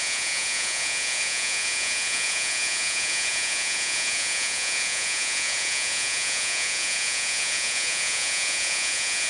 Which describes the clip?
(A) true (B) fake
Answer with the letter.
B